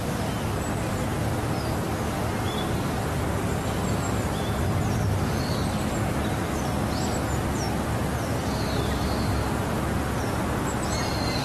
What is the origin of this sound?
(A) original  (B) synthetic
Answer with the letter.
A